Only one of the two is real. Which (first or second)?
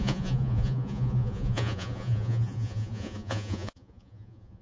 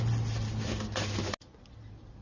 second